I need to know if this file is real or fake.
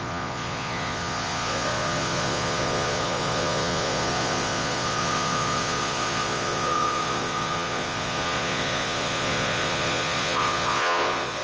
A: fake